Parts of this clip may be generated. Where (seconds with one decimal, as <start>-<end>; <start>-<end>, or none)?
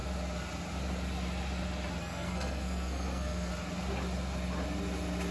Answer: 2.0-3.5